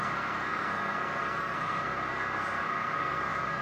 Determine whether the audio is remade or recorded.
remade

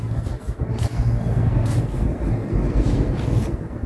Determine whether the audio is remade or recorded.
remade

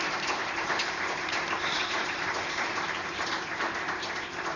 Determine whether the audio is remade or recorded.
remade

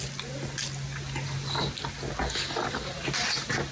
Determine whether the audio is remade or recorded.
recorded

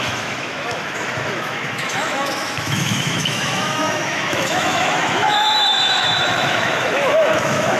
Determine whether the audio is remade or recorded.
remade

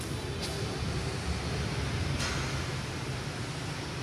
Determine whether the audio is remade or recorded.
recorded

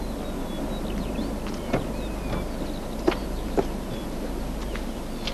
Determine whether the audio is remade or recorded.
recorded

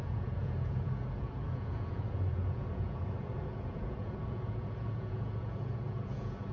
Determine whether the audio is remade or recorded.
remade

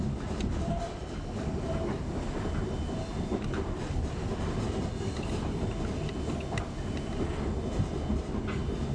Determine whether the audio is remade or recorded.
recorded